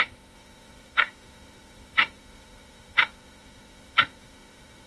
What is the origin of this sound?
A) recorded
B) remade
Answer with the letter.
B